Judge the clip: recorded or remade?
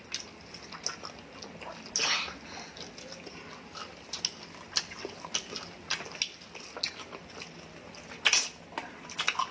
recorded